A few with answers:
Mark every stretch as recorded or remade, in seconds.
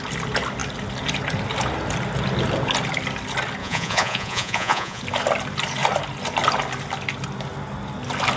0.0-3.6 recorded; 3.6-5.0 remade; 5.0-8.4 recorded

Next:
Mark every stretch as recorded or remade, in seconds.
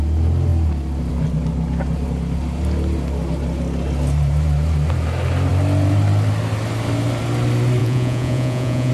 0.0-7.8 recorded; 7.8-8.9 remade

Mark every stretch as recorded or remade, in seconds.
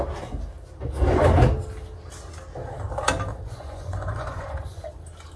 0.0-3.3 recorded; 3.3-4.8 remade; 4.8-5.4 recorded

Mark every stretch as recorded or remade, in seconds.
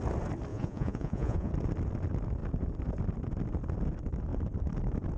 0.0-0.5 recorded; 0.5-1.5 remade; 1.5-5.2 recorded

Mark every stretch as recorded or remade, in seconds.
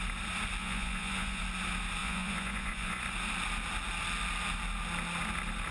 0.0-0.6 recorded; 0.6-1.4 remade; 1.4-2.0 recorded; 2.0-3.0 remade; 3.0-5.7 recorded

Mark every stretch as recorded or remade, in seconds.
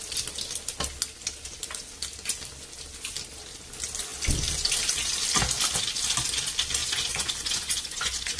0.0-6.8 recorded; 6.8-8.4 remade